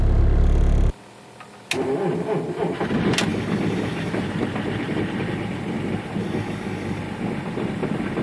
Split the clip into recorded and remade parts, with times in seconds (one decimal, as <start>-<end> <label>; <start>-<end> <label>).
0.0-3.3 recorded; 3.3-4.1 remade; 4.1-6.2 recorded; 6.2-7.0 remade; 7.0-8.2 recorded